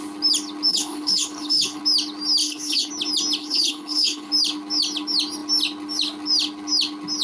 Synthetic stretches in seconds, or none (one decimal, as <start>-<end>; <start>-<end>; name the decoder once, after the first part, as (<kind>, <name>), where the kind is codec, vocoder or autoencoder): 0.7-1.8 (codec, HILCodec); 2.4-2.9; 3.4-4.3